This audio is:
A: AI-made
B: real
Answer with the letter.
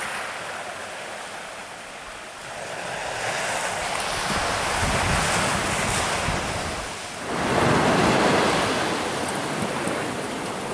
B